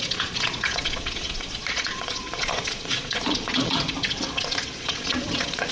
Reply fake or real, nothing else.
fake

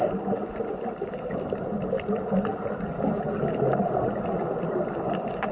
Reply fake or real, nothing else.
real